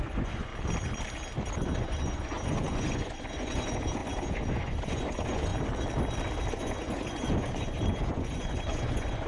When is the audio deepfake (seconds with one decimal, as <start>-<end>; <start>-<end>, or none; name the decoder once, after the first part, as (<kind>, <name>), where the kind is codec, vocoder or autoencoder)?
0.0-0.5 (vocoder, Vocos); 1.8-5.5; 6.5-9.3